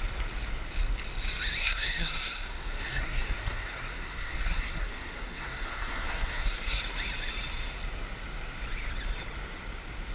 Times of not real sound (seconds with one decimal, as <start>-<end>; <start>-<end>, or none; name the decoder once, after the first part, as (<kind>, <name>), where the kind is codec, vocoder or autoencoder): 1.6-6.8 (codec, SNAC)